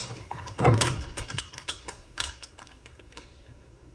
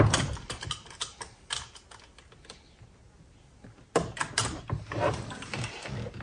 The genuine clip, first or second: second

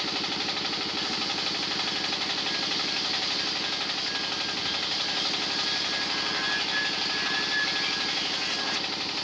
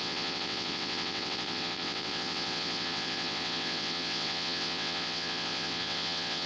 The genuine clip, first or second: first